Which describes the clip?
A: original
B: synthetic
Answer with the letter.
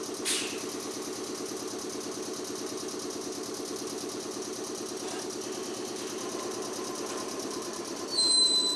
A